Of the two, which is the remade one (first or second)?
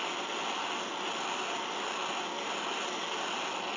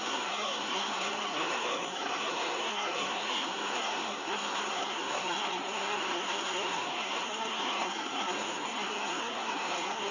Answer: second